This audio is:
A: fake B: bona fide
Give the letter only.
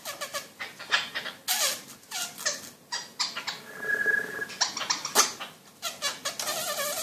B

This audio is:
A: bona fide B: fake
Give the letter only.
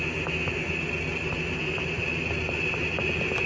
A